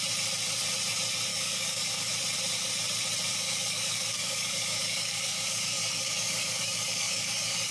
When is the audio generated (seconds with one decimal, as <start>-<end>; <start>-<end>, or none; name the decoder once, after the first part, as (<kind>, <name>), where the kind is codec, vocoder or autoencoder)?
1.3-2.1 (codec, DAC); 3.3-7.7